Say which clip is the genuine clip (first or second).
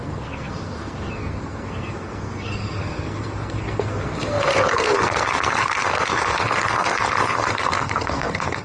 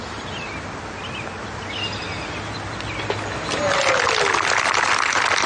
second